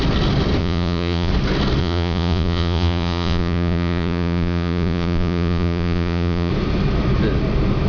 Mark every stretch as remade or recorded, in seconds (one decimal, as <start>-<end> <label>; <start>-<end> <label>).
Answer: 0.0-0.6 recorded; 0.6-1.3 remade; 1.3-1.8 recorded; 1.8-6.5 remade; 6.5-7.9 recorded